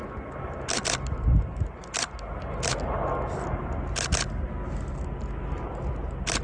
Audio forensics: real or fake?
real